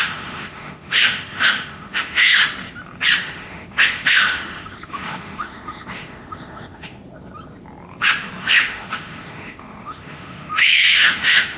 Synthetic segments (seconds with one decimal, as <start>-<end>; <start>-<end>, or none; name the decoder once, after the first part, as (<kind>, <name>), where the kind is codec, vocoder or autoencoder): 0.0-2.4 (autoencoder, DAC-VAE); 3.2-7.0; 8.4-11.6